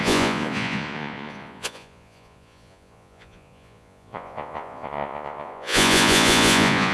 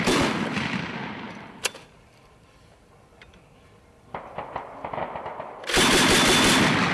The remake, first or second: first